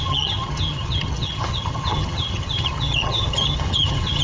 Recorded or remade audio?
remade